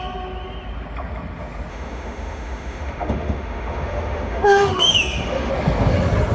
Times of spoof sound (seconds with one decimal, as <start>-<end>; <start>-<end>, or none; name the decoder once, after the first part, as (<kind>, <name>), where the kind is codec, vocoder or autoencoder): 1.7-5.5 (autoencoder, DAC-VAE)